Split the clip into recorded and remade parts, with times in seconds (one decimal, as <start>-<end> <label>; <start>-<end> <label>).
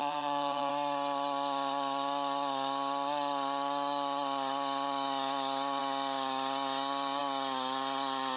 0.0-0.7 remade; 0.7-8.4 recorded